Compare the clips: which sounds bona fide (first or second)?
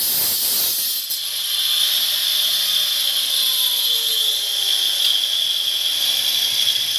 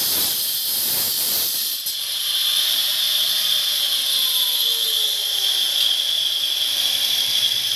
first